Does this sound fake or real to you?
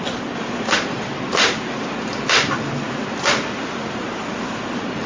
real